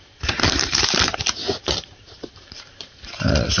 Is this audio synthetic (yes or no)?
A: yes